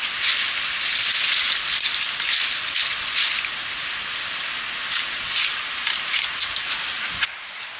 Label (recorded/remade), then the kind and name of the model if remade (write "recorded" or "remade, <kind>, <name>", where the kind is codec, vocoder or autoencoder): recorded